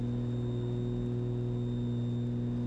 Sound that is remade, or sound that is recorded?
recorded